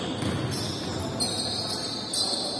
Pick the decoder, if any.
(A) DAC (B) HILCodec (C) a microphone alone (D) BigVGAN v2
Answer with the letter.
C